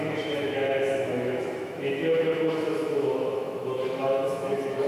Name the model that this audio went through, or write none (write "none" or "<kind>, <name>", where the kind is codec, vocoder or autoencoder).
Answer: autoencoder, DAC-VAE